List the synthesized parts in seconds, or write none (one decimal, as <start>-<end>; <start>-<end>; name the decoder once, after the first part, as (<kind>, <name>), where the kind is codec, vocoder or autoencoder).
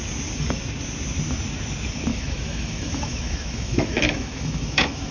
2.1-5.1 (autoencoder, DAC-VAE)